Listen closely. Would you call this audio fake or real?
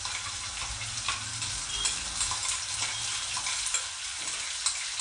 real